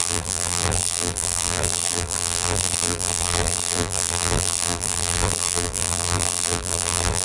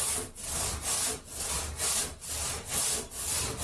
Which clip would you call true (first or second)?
second